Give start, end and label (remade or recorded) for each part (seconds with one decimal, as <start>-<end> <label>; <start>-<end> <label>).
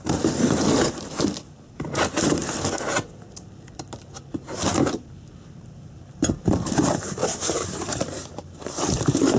0.0-2.4 remade; 2.4-4.7 recorded; 4.7-9.4 remade